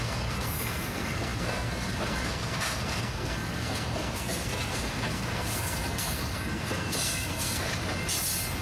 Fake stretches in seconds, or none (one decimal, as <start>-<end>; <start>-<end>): 0.0-7.7